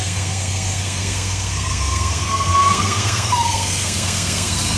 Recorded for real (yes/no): no